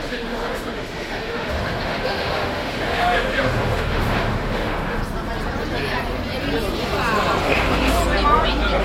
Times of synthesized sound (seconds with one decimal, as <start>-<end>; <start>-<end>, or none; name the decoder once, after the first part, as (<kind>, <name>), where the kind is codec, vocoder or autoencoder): 0.0-5.0 (autoencoder, DAC-VAE); 7.4-8.0